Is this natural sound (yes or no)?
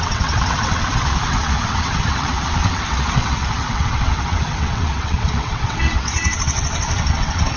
no